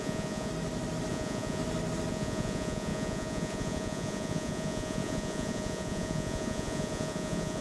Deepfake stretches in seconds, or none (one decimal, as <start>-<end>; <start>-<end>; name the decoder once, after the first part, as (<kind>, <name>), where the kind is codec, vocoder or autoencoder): 0.0-0.5 (vocoder, Vocos); 1.1-1.6; 2.1-7.6